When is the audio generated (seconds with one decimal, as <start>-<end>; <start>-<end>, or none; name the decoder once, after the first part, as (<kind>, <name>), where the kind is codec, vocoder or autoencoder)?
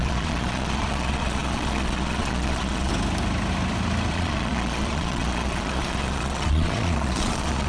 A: 0.0-2.9 (vocoder, Vocos); 4.1-7.7